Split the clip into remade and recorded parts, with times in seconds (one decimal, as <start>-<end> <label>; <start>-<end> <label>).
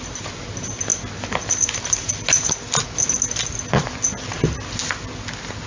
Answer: 0.0-5.7 recorded